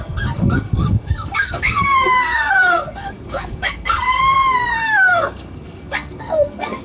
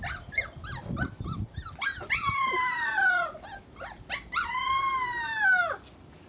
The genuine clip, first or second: second